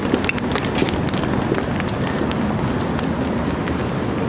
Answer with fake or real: real